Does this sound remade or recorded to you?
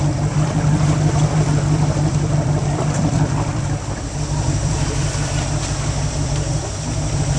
remade